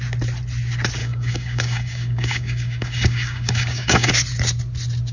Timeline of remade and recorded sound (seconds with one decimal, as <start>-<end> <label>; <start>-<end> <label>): 0.0-1.0 recorded; 1.0-4.1 remade; 4.1-5.1 recorded